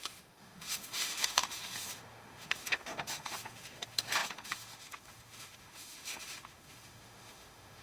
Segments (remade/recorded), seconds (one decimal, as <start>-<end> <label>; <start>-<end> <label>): 0.0-7.8 remade